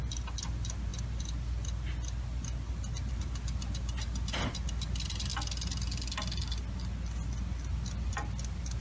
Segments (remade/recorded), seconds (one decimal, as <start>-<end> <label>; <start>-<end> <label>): 0.0-8.8 recorded